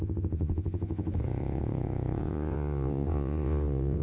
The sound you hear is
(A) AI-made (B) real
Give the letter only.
A